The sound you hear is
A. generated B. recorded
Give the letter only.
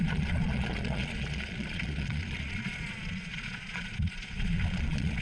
A